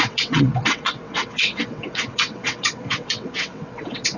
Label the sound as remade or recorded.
remade